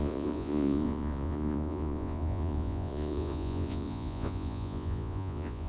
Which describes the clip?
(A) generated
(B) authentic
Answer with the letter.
A